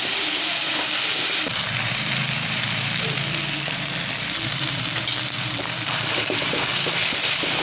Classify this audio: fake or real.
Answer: fake